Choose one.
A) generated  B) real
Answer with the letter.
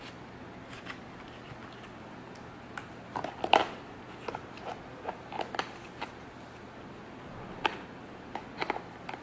B